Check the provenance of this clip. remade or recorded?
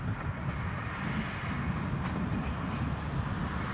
recorded